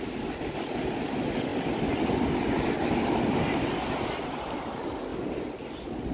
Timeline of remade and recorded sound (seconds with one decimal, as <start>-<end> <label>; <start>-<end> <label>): 0.0-6.1 recorded